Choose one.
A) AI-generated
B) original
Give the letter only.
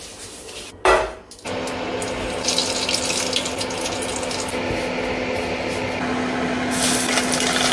B